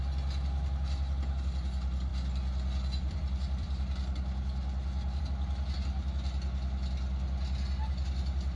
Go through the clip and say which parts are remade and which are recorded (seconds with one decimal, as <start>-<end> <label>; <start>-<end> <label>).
0.0-2.1 recorded; 2.1-5.2 remade; 5.2-8.6 recorded